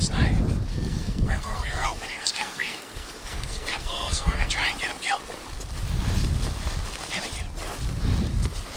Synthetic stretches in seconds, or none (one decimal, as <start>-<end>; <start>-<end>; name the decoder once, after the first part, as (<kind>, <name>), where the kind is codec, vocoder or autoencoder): 0.7-4.5 (codec, SNAC)